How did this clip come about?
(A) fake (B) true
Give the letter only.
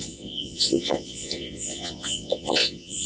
A